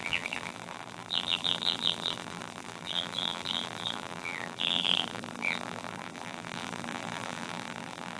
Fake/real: fake